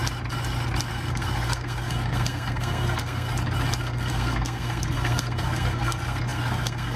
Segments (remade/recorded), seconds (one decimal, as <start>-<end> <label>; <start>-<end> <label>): 0.0-0.9 recorded; 0.9-3.3 remade; 3.3-3.8 recorded; 3.8-7.0 remade